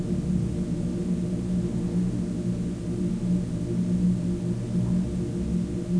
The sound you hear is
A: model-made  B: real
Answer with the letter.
B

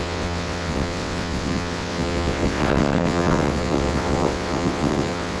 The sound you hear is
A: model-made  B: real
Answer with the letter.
A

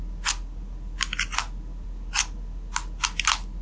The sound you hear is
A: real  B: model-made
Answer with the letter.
A